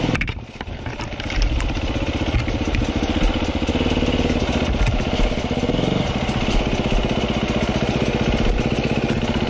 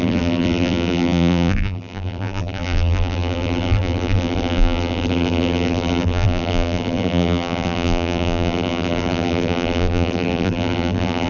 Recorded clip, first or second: first